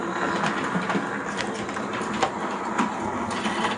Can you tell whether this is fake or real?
real